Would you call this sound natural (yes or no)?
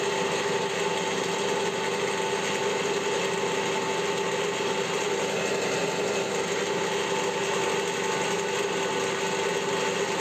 yes